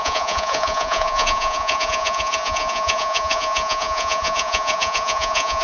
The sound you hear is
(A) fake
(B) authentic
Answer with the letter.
A